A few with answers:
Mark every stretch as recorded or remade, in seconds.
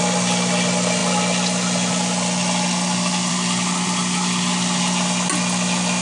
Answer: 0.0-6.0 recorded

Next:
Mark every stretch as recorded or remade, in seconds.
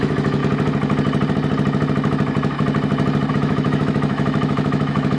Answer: 0.0-0.4 remade; 0.4-3.3 recorded; 3.3-5.2 remade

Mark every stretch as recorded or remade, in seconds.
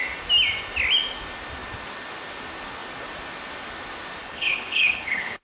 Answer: 0.0-4.2 recorded; 4.2-5.4 remade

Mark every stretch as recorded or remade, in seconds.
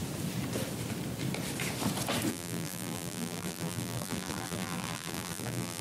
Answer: 0.0-2.3 recorded; 2.3-5.8 remade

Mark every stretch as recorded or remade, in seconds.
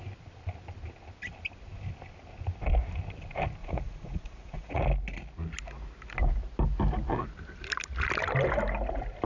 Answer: 0.0-3.6 recorded; 3.6-4.8 remade; 4.8-9.2 recorded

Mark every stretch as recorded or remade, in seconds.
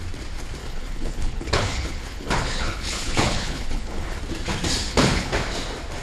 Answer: 0.0-0.6 recorded; 0.6-4.2 remade; 4.2-4.8 recorded; 4.8-5.3 remade; 5.3-6.0 recorded